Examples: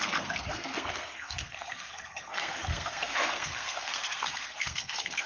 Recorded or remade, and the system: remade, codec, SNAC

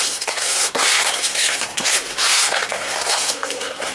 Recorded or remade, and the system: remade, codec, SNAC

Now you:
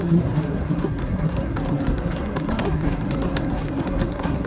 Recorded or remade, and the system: remade, codec, SNAC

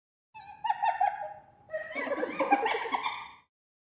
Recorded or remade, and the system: recorded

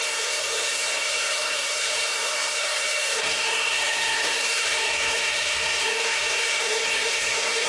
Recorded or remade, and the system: remade, codec, SNAC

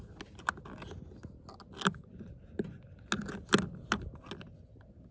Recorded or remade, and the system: recorded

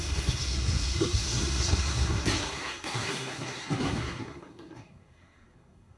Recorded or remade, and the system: remade, codec, SNAC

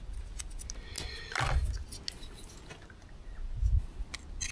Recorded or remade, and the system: recorded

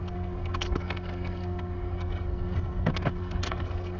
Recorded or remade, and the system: remade, codec, SNAC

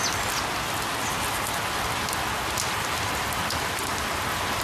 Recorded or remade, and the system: recorded